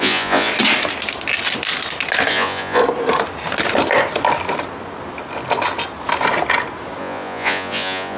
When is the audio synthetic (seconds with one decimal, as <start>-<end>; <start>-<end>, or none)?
0.0-0.5; 2.3-2.8; 7.0-8.2